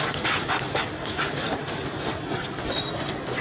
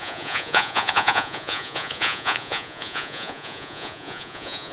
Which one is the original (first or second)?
first